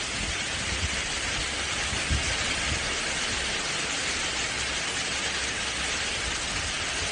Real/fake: real